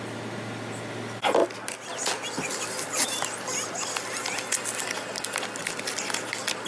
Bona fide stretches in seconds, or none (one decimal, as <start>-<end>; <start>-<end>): 0.0-6.7